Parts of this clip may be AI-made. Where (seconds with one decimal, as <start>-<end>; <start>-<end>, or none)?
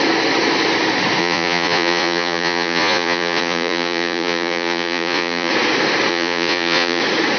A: 1.2-5.5; 6.1-7.0